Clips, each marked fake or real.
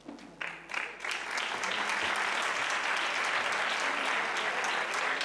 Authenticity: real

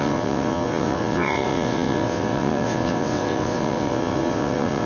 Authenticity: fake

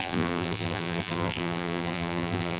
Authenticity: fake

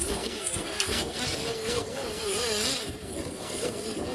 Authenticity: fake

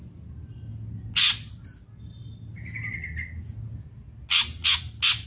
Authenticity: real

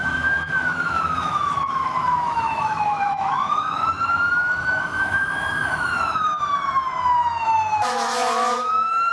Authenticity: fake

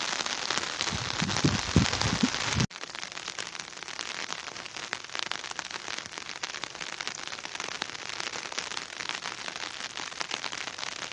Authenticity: real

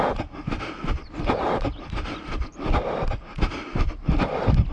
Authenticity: real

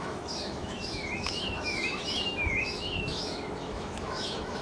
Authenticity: fake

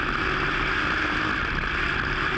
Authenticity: real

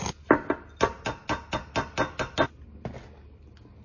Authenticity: real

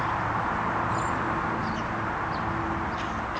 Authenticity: real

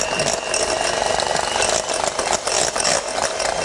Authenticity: real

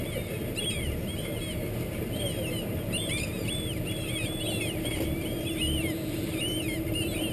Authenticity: fake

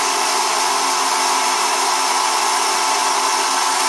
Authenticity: real